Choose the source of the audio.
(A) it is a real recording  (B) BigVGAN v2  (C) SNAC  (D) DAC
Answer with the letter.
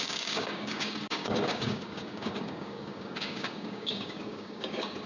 D